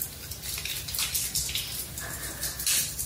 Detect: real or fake real